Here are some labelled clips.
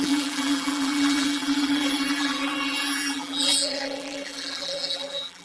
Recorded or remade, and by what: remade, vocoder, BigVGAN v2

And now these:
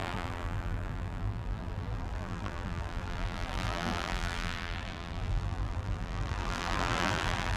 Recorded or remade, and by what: remade, vocoder, BigVGAN v2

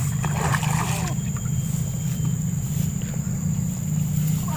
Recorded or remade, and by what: recorded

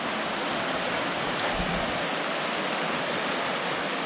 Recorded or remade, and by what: recorded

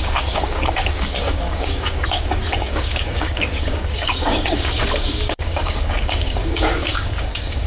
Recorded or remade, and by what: remade, codec, DAC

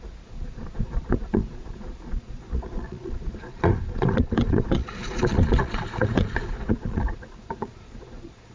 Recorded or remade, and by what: remade, vocoder, Vocos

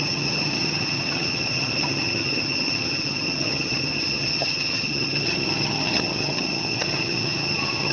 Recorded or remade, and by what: remade, vocoder, HiFi-GAN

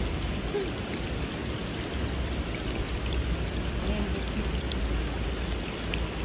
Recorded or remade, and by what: recorded